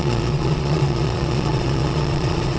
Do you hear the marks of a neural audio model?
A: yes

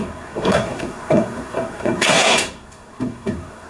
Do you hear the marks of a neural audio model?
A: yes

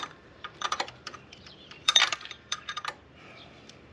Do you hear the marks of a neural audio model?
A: yes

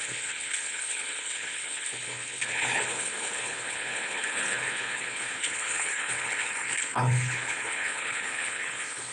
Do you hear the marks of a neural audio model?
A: yes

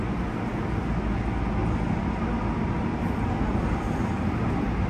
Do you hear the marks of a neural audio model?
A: no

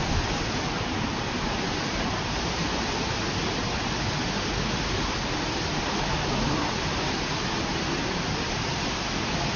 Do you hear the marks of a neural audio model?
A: no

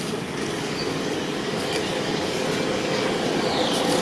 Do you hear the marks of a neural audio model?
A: yes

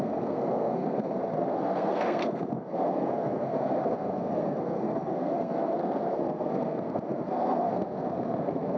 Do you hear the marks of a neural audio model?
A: yes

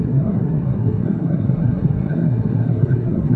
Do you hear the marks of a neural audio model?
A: yes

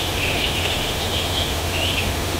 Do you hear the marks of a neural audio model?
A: yes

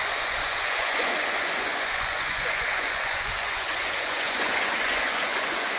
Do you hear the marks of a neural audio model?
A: yes